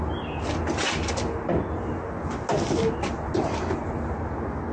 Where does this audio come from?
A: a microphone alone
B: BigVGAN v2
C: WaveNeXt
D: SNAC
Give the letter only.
A